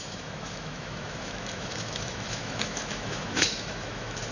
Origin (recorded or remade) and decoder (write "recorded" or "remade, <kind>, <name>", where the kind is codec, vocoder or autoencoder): remade, autoencoder, DAC-VAE